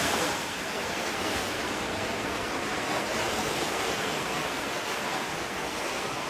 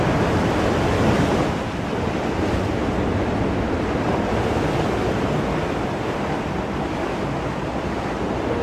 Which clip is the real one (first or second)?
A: second